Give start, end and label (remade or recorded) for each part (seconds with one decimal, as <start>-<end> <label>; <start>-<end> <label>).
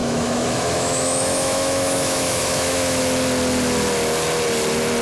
0.0-3.0 remade; 3.0-5.0 recorded